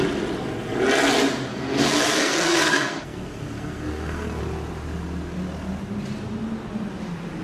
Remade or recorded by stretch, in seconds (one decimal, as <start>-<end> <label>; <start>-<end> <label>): 0.0-1.5 recorded; 1.5-4.4 remade; 4.4-7.4 recorded